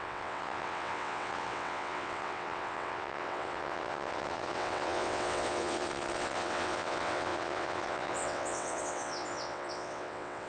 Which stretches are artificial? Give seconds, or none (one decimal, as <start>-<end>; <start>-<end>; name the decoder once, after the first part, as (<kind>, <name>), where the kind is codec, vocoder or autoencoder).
0.0-10.5 (vocoder, WaveNeXt)